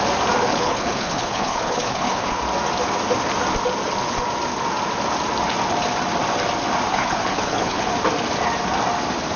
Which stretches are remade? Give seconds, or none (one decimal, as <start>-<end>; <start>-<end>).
0.5-2.4; 6.9-7.9